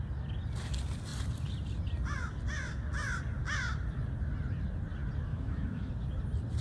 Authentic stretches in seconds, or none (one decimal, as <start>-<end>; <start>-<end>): 0.0-5.3; 5.9-6.6